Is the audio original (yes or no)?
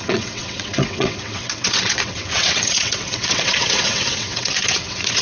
no